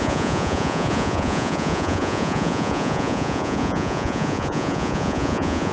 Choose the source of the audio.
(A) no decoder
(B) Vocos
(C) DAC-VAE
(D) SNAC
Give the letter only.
B